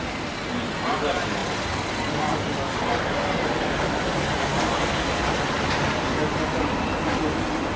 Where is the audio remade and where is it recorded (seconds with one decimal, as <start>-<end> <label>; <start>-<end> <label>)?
0.0-7.8 recorded